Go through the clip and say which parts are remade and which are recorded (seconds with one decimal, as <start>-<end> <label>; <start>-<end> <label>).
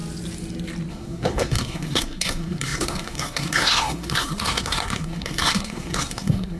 0.0-0.9 recorded; 0.9-6.6 remade